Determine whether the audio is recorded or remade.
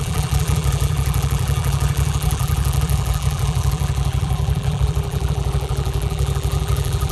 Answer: remade